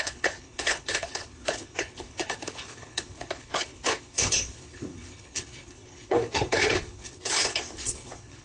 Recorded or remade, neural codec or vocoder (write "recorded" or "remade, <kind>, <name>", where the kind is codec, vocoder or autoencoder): remade, codec, HILCodec